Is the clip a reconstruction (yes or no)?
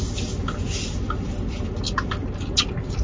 no